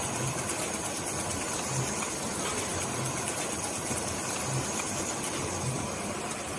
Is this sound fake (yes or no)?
no